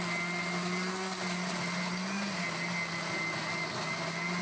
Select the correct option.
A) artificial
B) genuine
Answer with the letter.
B